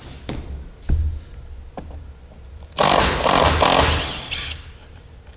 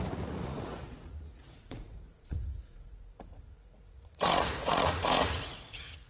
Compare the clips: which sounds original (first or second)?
first